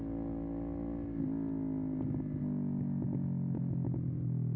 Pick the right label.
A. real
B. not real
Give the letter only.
A